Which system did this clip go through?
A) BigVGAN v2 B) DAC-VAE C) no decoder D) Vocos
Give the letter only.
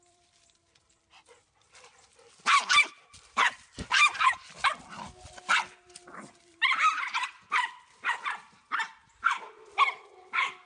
A